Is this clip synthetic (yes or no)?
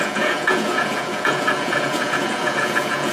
yes